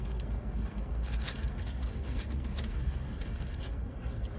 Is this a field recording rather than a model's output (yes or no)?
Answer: no